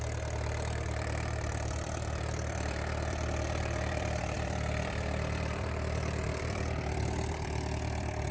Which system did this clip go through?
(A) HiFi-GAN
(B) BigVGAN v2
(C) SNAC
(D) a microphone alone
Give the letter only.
B